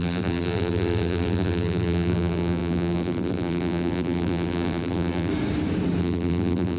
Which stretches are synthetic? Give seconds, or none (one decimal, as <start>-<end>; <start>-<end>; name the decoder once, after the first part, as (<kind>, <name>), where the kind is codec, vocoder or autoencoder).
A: 0.0-5.3 (vocoder, BigVGAN v2); 6.0-6.8